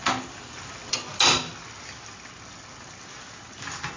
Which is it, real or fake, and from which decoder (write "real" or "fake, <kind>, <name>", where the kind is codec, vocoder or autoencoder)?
real